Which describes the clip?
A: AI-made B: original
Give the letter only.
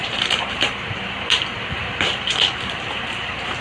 A